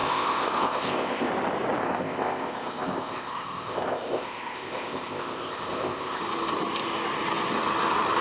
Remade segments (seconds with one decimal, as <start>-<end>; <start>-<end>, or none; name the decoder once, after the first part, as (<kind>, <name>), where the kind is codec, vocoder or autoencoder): 0.0-1.3 (codec, ZipCodec); 1.8-6.2